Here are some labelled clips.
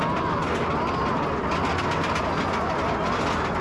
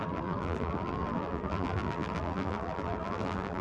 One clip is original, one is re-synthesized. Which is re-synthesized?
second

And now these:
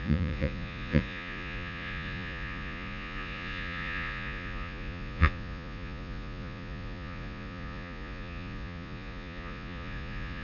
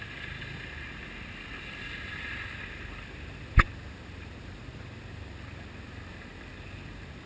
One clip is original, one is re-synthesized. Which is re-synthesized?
first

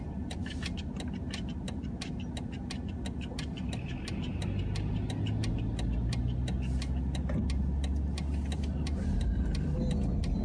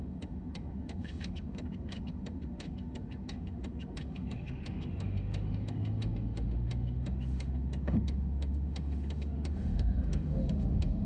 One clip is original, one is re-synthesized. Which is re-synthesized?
second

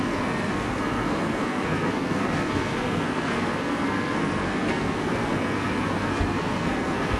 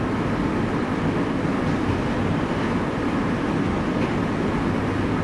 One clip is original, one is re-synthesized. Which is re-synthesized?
first